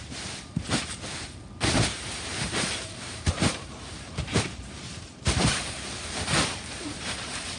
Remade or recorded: remade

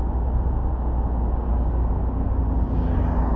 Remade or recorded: recorded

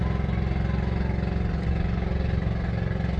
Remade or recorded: recorded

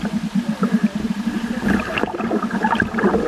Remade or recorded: recorded